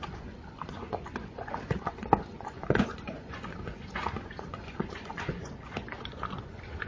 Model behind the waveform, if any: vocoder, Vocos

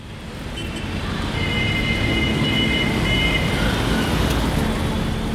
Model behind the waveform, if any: none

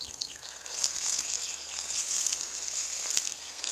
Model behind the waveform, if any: codec, SNAC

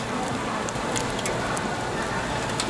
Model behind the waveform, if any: none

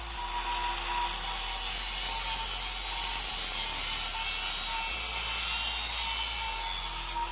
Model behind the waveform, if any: none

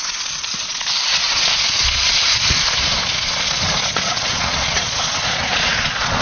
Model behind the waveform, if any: vocoder, Vocos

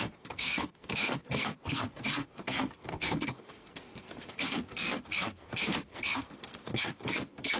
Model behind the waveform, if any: codec, SNAC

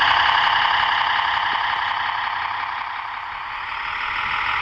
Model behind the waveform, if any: none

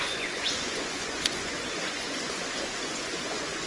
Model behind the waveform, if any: vocoder, Vocos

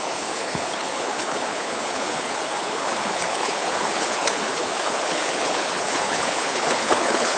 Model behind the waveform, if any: codec, HILCodec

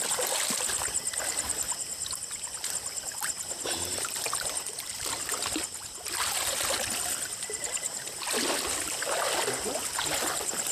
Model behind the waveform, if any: none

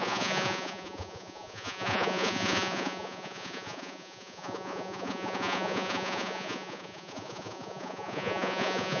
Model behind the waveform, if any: vocoder, Vocos